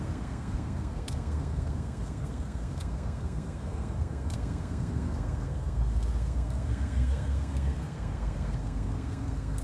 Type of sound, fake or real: fake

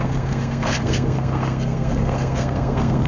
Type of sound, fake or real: fake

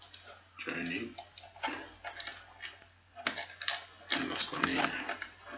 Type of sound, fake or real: real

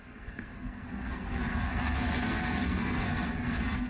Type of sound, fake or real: fake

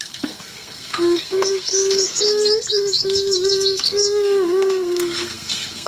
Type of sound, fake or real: fake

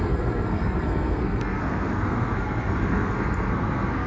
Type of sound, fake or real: fake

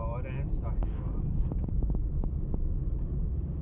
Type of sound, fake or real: real